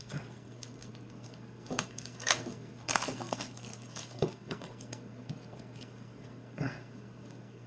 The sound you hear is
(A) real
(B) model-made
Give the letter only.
B